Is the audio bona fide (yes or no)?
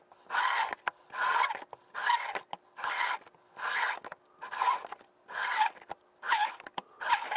yes